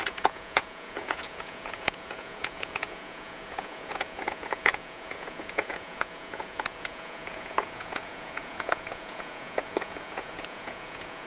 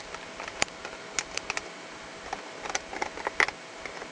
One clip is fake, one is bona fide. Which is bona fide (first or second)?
second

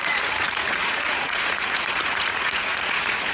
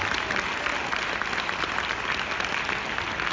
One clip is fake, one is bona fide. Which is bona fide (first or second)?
second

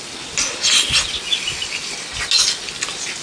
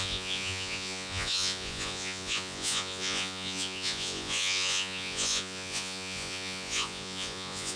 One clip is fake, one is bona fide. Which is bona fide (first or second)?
first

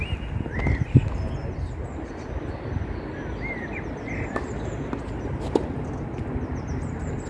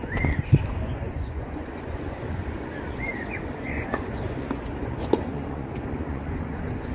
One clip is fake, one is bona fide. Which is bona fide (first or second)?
first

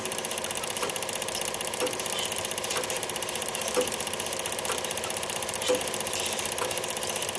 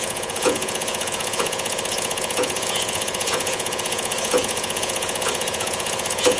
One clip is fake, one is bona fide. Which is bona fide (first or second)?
first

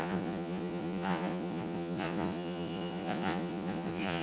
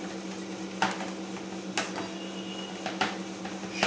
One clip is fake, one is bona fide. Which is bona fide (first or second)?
second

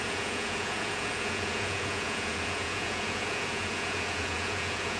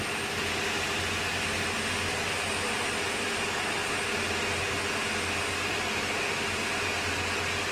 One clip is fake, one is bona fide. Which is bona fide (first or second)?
second